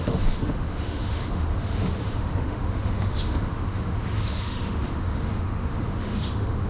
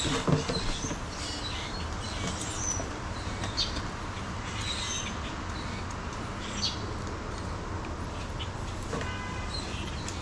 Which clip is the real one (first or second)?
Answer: second